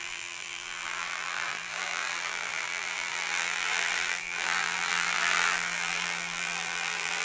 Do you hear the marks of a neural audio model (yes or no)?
yes